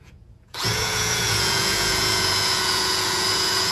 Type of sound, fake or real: fake